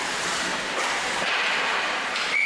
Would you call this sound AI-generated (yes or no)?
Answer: yes